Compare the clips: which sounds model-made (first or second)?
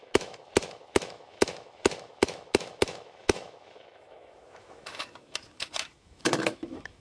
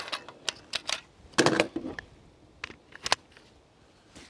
first